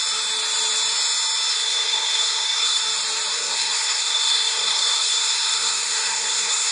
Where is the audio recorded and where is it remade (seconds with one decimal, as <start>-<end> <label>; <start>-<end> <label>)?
0.0-1.5 recorded; 1.5-2.8 remade; 2.8-3.3 recorded; 3.3-6.7 remade